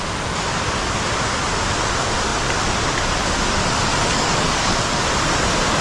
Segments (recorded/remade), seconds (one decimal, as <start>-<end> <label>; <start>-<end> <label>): 0.0-3.9 recorded; 3.9-4.7 remade; 4.7-5.8 recorded